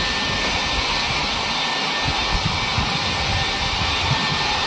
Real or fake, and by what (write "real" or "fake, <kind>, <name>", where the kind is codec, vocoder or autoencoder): real